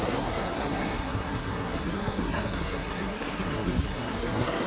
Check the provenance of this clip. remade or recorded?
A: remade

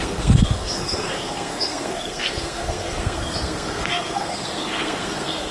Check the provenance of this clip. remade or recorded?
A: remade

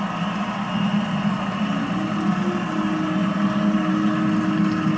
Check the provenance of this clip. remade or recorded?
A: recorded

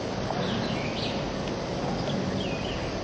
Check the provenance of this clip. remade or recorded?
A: recorded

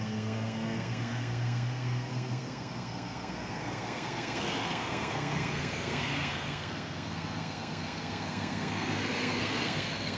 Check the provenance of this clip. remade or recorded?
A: remade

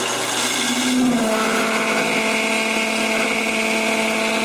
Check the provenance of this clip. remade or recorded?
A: recorded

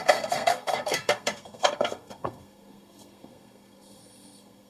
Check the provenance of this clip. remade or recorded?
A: remade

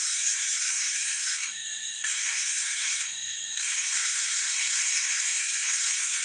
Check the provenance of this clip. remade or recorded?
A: remade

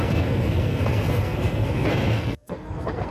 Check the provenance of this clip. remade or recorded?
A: remade